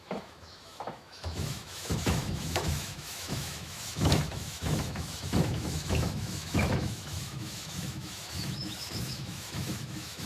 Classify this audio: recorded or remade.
remade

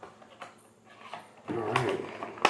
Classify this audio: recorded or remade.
recorded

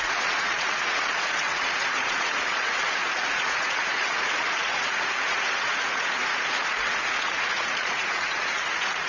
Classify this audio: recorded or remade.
remade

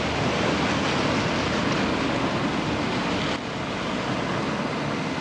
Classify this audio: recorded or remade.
recorded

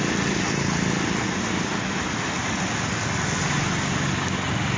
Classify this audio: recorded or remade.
recorded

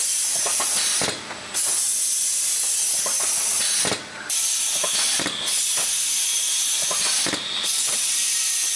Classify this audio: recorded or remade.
recorded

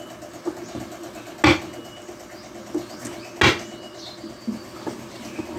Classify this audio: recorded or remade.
recorded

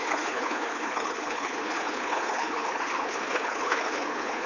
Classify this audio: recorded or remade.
remade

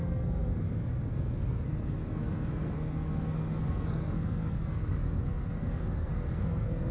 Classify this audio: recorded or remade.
remade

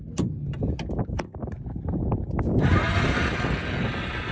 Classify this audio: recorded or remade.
recorded